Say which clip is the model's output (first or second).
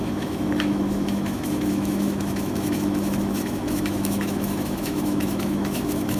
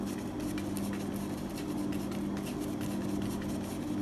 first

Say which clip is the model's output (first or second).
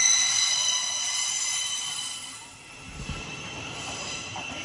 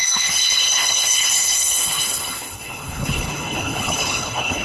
second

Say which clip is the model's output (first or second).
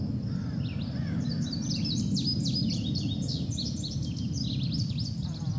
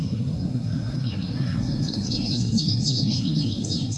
second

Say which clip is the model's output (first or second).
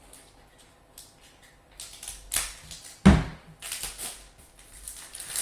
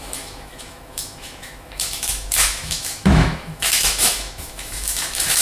second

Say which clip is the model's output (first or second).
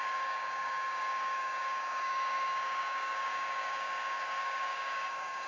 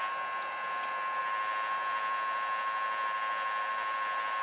first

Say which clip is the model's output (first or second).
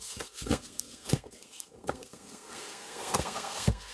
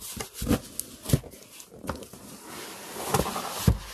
first